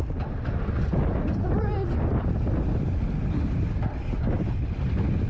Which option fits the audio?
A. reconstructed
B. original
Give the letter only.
B